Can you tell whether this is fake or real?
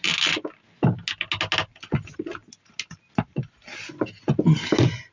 real